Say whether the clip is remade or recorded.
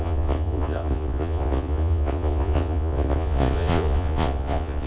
remade